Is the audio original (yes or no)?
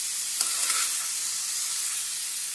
yes